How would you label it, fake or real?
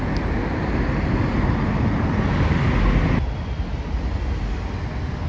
real